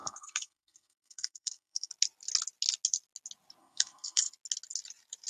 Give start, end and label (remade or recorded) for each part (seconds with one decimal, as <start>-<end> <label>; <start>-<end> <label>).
0.0-1.9 remade; 1.9-3.6 recorded; 3.6-4.3 remade; 4.3-5.3 recorded